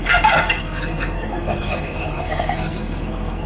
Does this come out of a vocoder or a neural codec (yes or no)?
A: yes